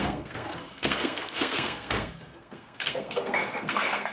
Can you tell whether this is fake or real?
fake